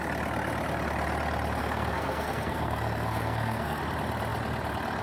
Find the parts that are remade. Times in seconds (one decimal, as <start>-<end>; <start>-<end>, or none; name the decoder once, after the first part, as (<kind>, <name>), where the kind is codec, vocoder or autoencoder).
1.6-3.8 (codec, SNAC)